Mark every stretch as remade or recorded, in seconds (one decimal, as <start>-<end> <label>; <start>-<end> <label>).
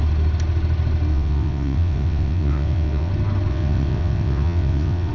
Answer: 0.0-1.1 recorded; 1.1-3.1 remade; 3.1-3.5 recorded; 3.5-5.1 remade